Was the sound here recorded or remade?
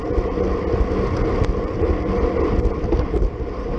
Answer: recorded